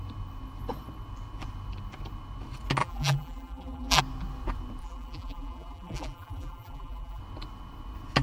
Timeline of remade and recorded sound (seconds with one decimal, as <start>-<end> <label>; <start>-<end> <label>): 0.0-2.8 recorded; 2.8-4.0 remade; 4.0-4.8 recorded; 4.8-7.2 remade; 7.2-8.2 recorded